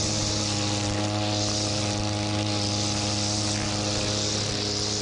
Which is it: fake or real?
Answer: real